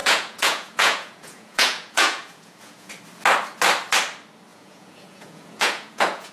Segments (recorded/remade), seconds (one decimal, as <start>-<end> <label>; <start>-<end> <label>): 0.0-2.9 remade; 2.9-4.5 recorded; 4.5-6.3 remade